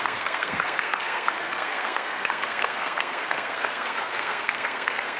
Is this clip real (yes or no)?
no